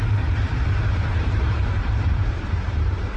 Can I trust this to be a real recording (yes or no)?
no